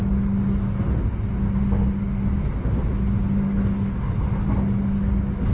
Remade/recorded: recorded